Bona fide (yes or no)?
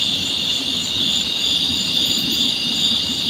yes